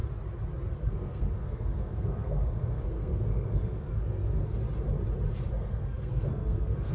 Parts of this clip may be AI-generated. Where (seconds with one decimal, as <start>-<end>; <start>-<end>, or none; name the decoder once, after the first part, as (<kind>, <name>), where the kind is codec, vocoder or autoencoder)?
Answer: 0.7-4.4 (codec, SNAC); 5.5-6.9